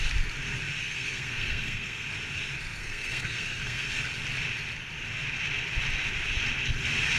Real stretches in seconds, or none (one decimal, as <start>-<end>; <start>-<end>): 0.0-0.8; 2.1-2.8; 3.9-7.2